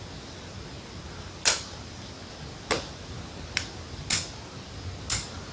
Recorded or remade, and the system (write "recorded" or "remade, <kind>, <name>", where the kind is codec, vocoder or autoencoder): recorded